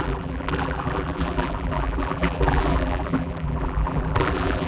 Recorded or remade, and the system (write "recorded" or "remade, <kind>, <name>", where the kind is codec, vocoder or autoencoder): remade, vocoder, BigVGAN v2